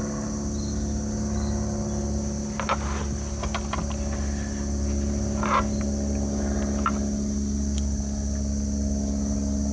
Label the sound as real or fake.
real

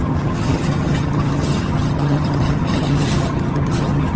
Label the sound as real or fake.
fake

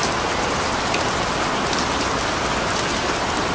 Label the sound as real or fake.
real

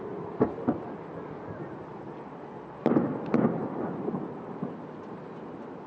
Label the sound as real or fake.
real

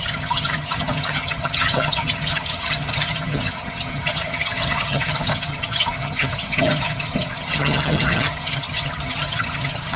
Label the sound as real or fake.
fake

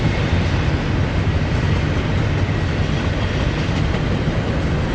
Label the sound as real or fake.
real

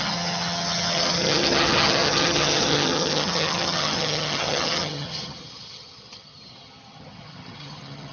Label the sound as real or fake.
fake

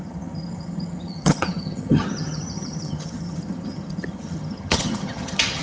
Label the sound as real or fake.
fake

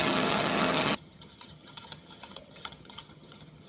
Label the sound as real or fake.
fake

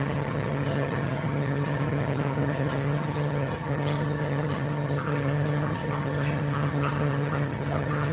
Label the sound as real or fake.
fake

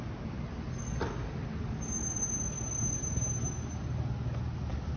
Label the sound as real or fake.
real